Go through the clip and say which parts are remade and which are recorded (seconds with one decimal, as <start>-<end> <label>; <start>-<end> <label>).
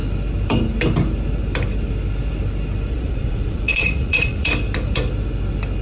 0.0-2.9 recorded; 2.9-4.5 remade; 4.5-5.8 recorded